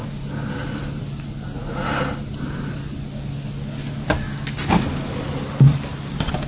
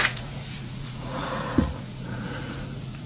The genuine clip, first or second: first